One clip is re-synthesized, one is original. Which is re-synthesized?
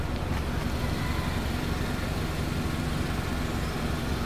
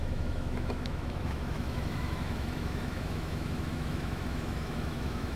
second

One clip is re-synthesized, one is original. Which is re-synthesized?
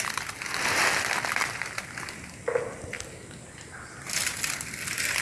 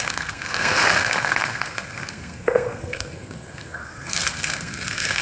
second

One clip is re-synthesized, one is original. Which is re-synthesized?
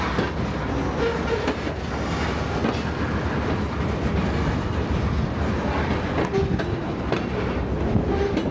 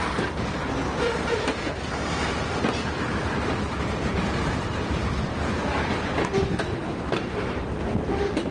second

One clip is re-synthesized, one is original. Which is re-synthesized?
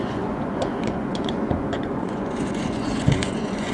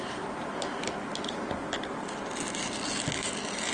first